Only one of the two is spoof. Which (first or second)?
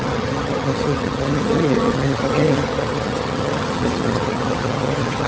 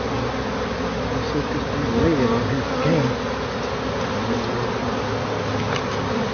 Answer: first